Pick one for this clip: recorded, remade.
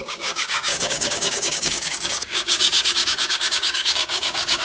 remade